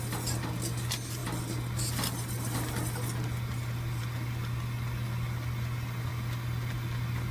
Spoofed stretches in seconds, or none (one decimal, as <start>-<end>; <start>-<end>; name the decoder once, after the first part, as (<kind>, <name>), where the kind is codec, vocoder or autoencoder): none